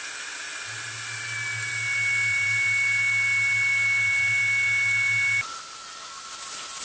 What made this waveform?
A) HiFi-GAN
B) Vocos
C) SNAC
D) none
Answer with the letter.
D